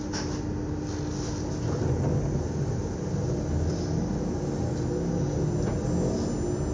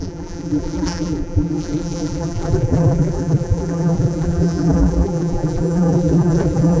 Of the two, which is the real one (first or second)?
first